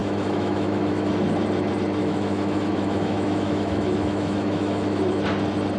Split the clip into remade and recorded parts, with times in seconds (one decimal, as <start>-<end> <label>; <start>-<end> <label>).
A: 0.0-1.1 remade; 1.1-2.0 recorded; 2.0-5.0 remade; 5.0-5.8 recorded